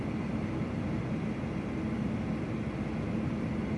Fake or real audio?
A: real